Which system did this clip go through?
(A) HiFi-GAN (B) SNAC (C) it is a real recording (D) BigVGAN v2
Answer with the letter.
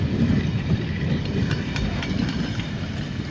C